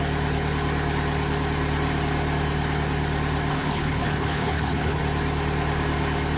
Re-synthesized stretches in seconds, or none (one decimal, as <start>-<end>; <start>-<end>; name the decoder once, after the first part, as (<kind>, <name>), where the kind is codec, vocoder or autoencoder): 3.5-5.0 (codec, HILCodec)